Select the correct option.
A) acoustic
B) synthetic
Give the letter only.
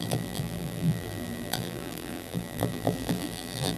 B